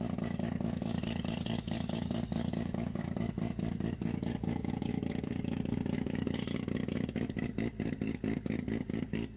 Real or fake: fake